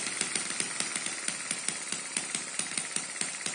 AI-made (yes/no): no